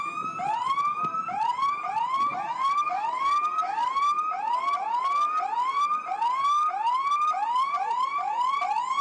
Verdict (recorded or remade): recorded